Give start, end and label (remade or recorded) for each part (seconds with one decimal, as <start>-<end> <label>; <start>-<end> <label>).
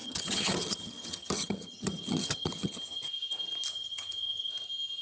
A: 0.0-3.0 remade; 3.0-3.7 recorded; 3.7-4.5 remade; 4.5-5.0 recorded